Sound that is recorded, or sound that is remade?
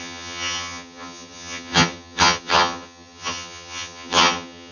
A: remade